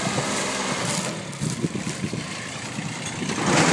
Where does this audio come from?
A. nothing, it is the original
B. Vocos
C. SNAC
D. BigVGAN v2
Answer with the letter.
A